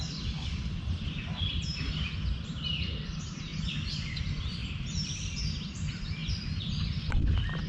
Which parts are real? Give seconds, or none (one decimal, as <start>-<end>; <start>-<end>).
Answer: 0.0-3.5; 4.1-4.6; 5.7-7.7